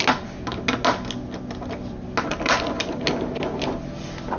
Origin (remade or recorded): recorded